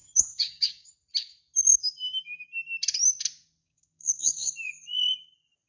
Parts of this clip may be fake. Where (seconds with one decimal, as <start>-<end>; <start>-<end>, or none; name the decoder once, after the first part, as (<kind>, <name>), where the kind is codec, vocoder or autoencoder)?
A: 0.0-0.9 (codec, DAC); 1.7-2.4; 3.6-4.7